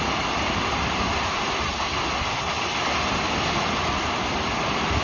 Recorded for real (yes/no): yes